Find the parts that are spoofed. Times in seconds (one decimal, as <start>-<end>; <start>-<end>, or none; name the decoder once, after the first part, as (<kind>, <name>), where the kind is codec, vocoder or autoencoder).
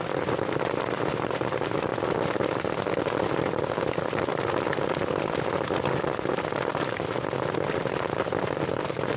none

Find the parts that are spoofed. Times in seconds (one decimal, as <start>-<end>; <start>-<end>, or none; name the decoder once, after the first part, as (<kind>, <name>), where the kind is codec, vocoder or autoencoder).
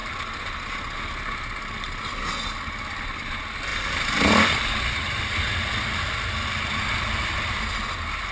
none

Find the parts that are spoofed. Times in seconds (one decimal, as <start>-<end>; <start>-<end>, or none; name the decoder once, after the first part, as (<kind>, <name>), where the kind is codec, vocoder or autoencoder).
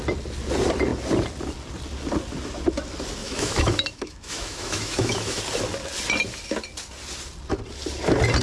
3.2-5.4 (autoencoder, DAC-VAE)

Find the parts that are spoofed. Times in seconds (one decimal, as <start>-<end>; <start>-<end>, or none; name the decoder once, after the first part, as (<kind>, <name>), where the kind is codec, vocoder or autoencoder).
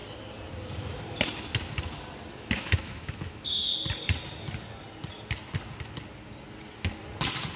2.3-3.7 (autoencoder, DAC-VAE)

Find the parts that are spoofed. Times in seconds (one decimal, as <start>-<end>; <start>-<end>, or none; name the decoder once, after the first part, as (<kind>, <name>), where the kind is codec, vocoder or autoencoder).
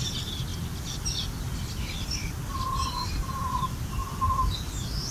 none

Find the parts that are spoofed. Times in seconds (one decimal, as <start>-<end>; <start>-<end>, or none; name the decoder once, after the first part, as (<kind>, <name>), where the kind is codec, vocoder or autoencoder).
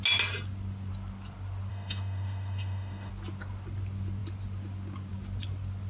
1.7-3.1 (autoencoder, DAC-VAE)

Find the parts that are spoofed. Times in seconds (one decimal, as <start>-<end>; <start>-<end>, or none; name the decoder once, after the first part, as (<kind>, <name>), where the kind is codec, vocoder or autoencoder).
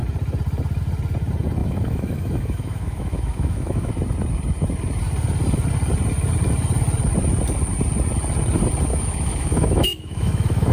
1.6-3.9 (autoencoder, DAC-VAE); 8.9-10.7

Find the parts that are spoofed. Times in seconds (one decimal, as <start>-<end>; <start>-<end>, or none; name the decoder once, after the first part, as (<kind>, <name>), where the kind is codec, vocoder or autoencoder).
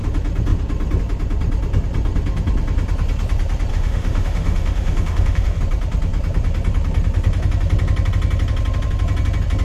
3.7-5.6 (autoencoder, DAC-VAE)